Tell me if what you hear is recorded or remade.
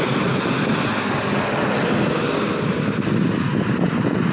recorded